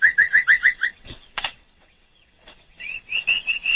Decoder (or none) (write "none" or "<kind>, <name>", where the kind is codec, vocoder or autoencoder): vocoder, WaveNeXt